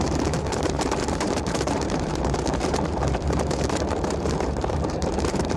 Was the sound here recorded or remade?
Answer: remade